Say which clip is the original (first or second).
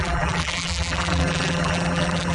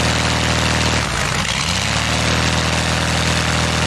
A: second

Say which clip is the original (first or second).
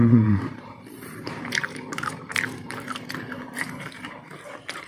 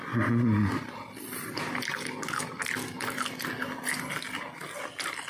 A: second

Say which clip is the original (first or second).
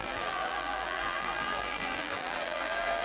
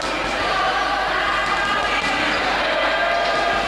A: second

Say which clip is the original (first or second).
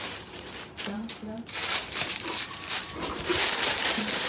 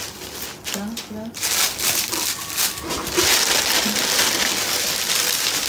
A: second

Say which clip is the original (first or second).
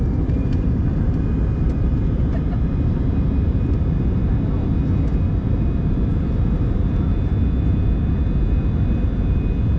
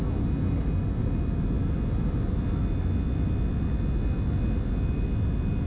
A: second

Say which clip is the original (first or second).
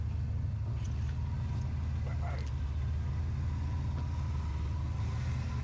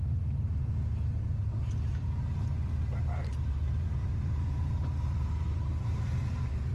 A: first